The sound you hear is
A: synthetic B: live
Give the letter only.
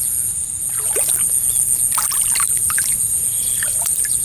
B